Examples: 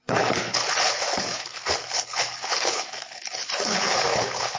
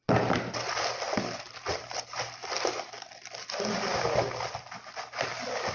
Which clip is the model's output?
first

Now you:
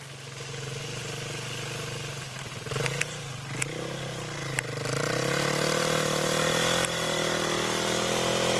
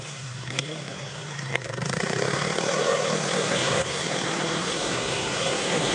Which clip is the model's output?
second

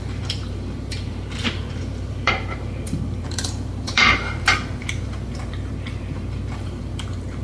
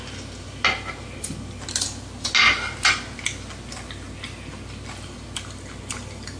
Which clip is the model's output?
first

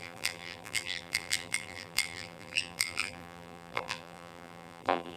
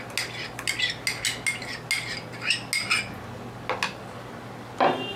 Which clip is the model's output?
first